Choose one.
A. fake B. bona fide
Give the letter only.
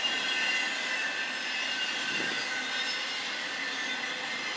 B